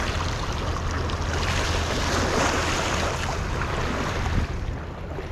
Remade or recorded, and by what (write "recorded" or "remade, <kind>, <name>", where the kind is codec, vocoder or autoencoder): recorded